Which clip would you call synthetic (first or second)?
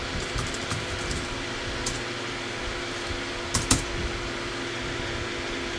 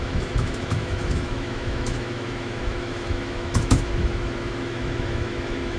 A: second